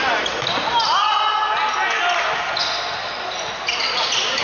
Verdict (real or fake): real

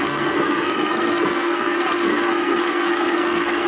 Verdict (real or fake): fake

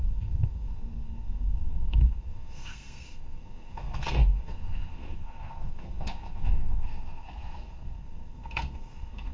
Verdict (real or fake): fake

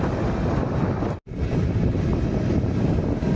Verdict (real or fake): real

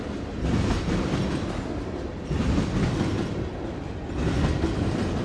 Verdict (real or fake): real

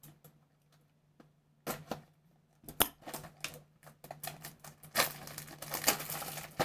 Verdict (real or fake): real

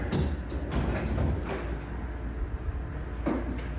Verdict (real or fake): real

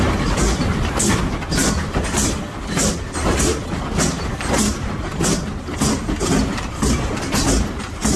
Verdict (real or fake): real